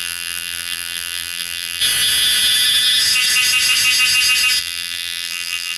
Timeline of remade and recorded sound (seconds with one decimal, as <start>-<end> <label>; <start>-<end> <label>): 0.0-1.8 remade; 1.8-4.6 recorded; 4.6-5.8 remade